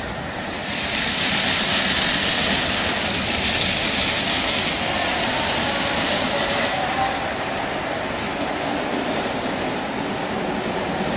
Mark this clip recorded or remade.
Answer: recorded